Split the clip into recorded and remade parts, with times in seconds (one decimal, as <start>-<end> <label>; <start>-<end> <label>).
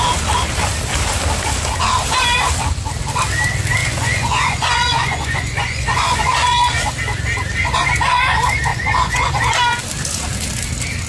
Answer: 0.0-3.8 recorded; 3.8-6.9 remade; 6.9-7.6 recorded; 7.6-8.2 remade; 8.2-8.7 recorded; 8.7-9.3 remade; 9.3-11.1 recorded